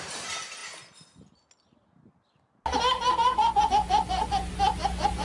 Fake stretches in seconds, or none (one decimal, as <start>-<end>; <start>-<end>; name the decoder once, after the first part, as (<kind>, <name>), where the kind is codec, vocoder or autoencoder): none